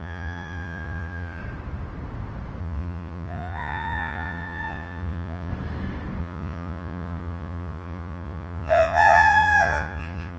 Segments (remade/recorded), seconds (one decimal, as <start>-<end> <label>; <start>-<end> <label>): 0.0-1.4 remade; 1.4-2.6 recorded; 2.6-5.5 remade; 5.5-6.2 recorded; 6.2-10.4 remade